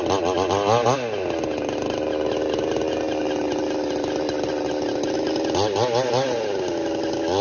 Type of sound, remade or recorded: recorded